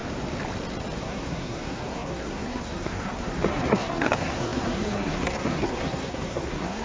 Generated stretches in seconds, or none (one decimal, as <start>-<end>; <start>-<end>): 1.0-6.8